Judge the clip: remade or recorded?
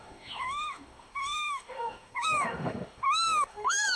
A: remade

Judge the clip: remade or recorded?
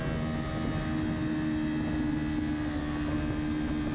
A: recorded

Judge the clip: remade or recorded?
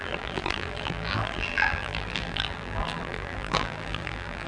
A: remade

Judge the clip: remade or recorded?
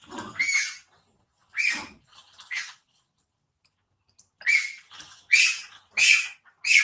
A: recorded